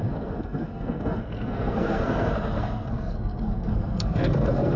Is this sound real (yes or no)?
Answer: no